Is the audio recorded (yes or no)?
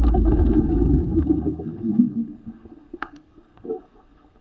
no